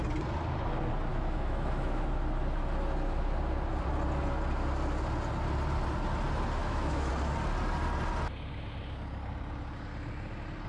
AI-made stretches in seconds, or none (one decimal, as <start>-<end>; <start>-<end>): 1.1-2.1; 6.6-7.1